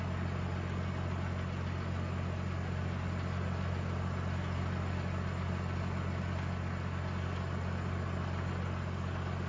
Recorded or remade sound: recorded